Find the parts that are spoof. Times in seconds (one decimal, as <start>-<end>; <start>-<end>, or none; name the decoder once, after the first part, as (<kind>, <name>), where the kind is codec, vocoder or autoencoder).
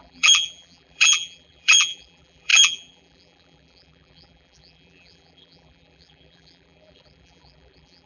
0.0-8.1 (vocoder, BigVGAN v2)